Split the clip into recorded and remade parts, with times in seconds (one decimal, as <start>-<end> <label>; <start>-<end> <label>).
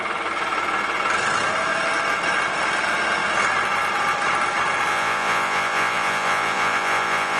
0.0-4.9 recorded; 4.9-7.4 remade